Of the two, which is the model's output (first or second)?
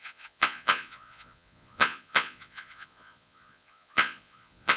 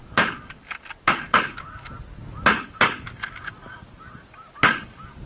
first